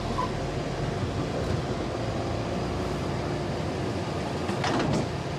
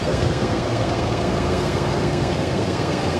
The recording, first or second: first